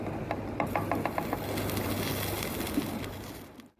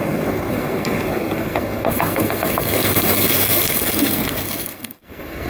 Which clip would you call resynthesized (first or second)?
second